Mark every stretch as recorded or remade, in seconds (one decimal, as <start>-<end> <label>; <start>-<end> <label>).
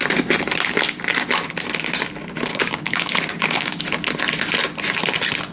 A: 0.0-2.5 recorded; 2.5-3.8 remade; 3.8-5.5 recorded